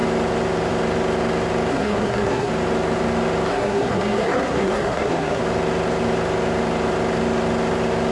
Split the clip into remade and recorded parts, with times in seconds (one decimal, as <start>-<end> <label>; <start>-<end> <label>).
0.0-1.7 recorded; 1.7-2.5 remade; 2.5-3.5 recorded; 3.5-5.4 remade; 5.4-8.1 recorded